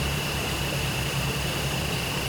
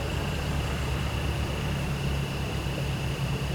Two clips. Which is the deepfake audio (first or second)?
first